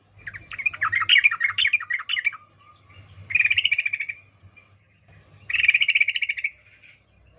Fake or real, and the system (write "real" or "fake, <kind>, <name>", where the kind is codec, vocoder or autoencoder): real